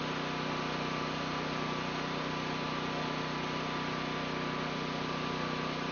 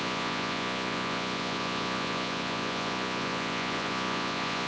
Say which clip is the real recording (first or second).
first